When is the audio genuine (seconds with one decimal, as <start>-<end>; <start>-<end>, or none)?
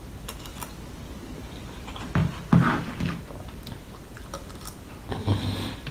0.0-5.9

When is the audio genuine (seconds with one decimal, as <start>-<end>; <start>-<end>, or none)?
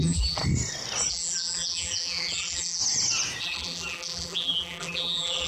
0.4-1.1; 2.8-3.4